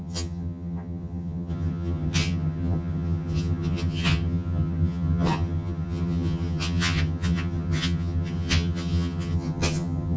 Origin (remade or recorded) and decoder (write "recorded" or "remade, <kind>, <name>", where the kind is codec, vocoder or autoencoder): remade, vocoder, HiFi-GAN